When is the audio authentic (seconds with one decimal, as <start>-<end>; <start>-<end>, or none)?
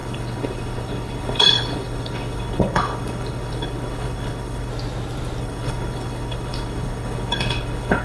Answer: 4.7-5.4